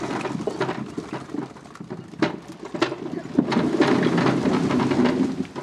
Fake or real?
real